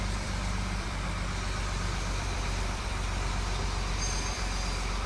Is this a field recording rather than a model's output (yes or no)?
no